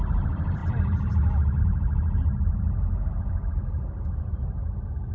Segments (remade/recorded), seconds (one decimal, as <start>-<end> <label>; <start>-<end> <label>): 0.0-2.9 recorded; 2.9-3.5 remade; 3.5-5.1 recorded